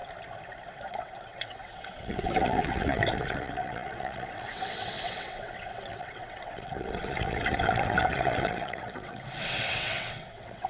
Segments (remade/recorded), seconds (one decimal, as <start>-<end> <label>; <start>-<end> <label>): 0.0-0.7 recorded; 0.7-10.7 remade